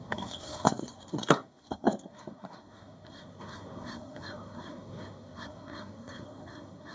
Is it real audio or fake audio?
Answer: fake